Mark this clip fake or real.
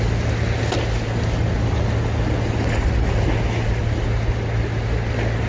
real